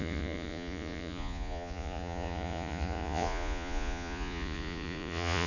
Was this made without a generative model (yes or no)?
no